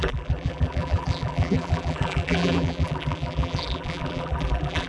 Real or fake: fake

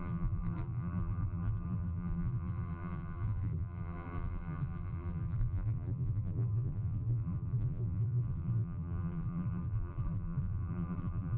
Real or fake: fake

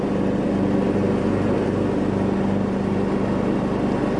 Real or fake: real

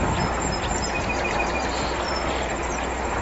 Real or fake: fake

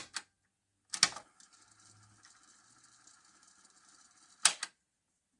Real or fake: real